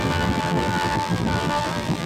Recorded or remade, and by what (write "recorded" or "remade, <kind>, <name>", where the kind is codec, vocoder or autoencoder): remade, vocoder, BigVGAN v2